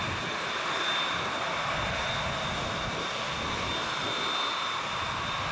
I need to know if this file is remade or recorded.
recorded